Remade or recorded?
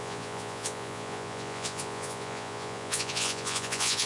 remade